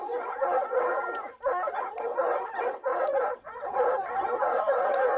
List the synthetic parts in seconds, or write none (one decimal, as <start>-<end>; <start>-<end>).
0.0-0.9; 1.7-5.2